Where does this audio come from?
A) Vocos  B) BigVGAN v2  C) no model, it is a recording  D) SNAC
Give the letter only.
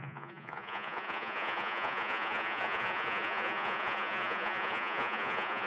A